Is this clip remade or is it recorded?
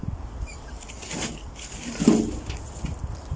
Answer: recorded